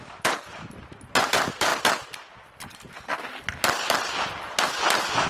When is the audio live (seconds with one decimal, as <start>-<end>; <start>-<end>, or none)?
1.7-2.7; 3.3-5.3